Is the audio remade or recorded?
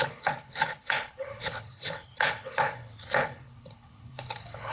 remade